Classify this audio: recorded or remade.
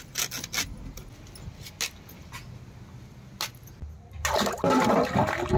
recorded